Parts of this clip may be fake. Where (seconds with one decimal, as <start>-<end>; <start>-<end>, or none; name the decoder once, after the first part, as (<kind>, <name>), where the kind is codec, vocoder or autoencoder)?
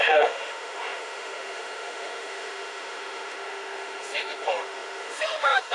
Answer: 0.0-5.7 (autoencoder, DAC-VAE)